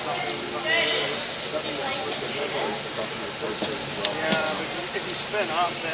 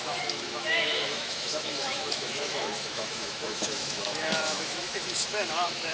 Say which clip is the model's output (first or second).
second